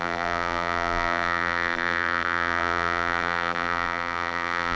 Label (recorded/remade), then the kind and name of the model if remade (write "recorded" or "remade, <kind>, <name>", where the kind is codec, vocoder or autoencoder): remade, vocoder, BigVGAN v2